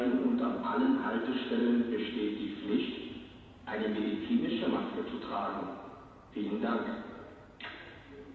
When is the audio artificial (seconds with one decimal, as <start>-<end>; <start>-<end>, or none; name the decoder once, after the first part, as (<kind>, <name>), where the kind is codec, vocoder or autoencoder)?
0.0-1.6 (vocoder, BigVGAN v2); 2.8-8.3